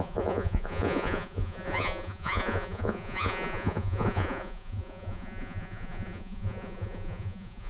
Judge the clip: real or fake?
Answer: fake